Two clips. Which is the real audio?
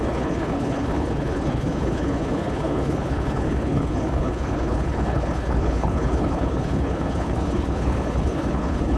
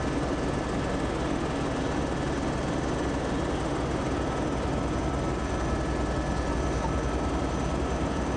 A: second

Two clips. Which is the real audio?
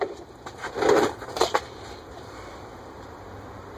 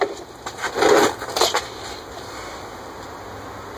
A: second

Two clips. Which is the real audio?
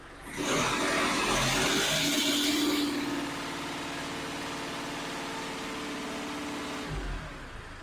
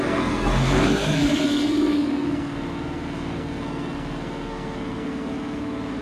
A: first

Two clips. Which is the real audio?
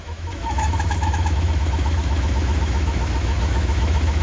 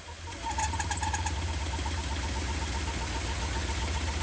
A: second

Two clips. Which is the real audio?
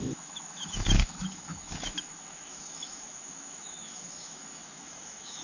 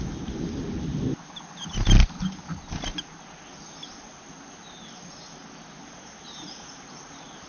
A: second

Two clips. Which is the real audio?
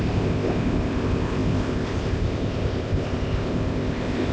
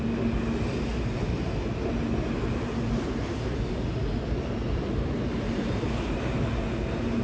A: second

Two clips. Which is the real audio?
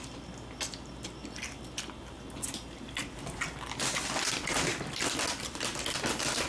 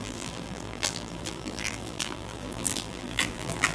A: first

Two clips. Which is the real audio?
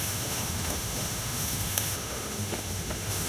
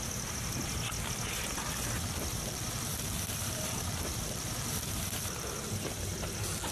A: second